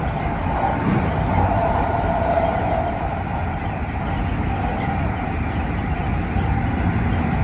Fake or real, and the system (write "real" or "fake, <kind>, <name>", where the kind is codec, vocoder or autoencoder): real